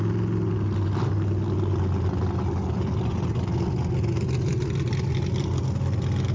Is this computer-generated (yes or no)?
no